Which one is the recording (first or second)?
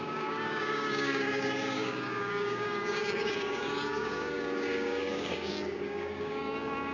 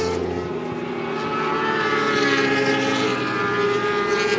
second